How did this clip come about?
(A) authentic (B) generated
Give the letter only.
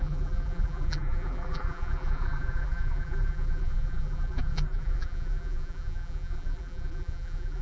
B